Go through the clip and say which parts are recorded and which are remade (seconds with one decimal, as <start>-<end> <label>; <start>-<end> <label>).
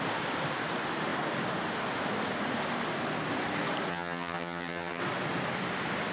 0.0-3.9 recorded; 3.9-5.0 remade; 5.0-6.1 recorded